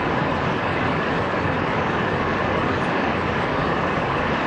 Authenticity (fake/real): fake